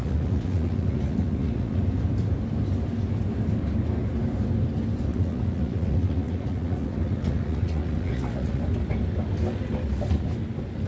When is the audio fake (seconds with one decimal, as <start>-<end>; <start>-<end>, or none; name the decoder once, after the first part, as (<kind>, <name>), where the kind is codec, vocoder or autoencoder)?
0.0-1.8 (vocoder, Vocos); 5.1-8.6

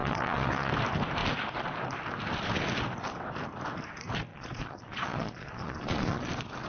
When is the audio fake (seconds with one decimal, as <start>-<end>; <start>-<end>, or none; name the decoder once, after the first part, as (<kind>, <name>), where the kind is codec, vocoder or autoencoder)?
0.0-0.7 (vocoder, Vocos); 4.3-6.3

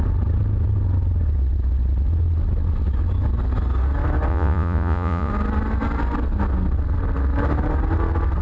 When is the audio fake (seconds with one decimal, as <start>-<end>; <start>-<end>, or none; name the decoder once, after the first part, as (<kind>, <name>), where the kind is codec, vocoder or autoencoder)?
4.3-5.3 (vocoder, Vocos)

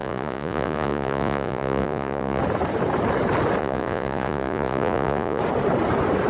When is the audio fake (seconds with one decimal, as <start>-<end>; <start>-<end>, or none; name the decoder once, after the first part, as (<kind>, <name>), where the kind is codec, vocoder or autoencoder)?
0.0-2.4 (vocoder, Vocos); 3.6-5.4

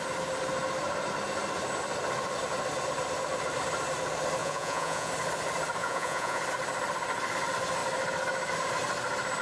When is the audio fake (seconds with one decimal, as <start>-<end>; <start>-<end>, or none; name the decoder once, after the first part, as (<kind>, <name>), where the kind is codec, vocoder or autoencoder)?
4.4-5.1 (vocoder, Vocos); 5.8-6.4